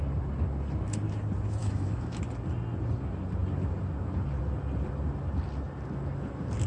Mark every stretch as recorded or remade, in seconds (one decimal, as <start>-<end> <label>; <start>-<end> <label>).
0.0-1.6 recorded; 1.6-2.2 remade; 2.2-6.7 recorded